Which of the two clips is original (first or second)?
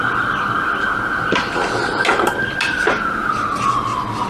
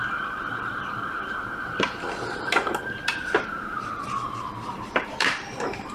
first